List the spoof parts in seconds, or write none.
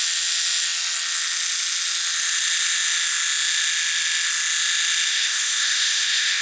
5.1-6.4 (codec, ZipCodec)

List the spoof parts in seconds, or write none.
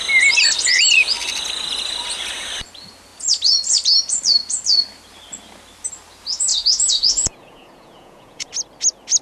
6.5-8.5 (vocoder, Vocos)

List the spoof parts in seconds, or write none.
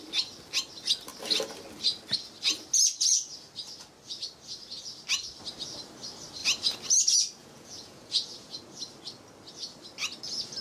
7.4-8.6 (vocoder, Vocos)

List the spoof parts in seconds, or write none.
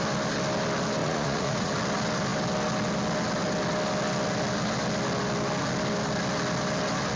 1.0-1.7 (vocoder, Vocos)